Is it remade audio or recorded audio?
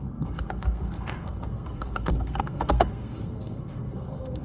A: remade